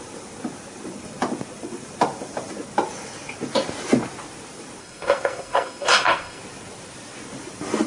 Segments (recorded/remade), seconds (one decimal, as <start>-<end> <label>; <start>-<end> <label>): 0.0-4.8 recorded; 4.8-6.4 remade; 6.4-7.9 recorded